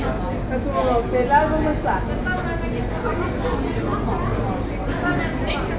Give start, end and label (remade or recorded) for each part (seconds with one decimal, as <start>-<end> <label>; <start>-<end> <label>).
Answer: 0.0-5.8 recorded

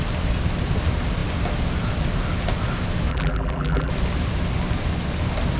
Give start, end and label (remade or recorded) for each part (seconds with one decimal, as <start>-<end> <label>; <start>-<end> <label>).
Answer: 0.0-3.1 recorded; 3.1-3.9 remade; 3.9-5.6 recorded